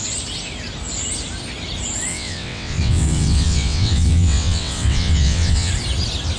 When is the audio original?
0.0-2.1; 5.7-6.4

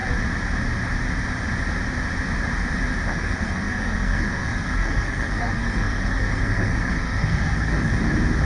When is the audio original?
0.0-3.1; 8.0-8.5

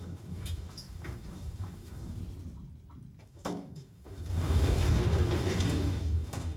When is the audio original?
2.2-3.2

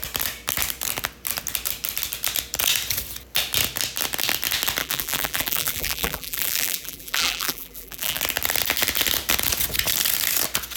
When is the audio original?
0.0-4.8; 8.2-10.8

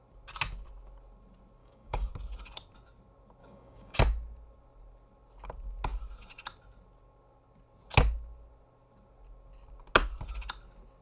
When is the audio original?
0.0-1.6; 2.1-3.4; 4.0-11.0

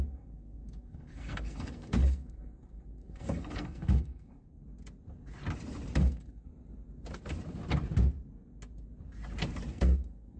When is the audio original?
4.6-6.0; 6.5-9.7

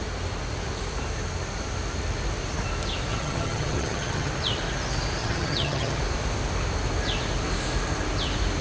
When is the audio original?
0.0-3.1; 4.3-5.2; 6.0-8.6

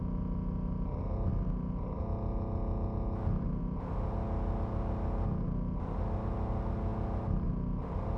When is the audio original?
0.0-8.2